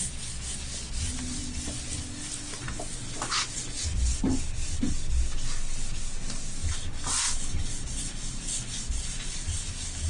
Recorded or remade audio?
recorded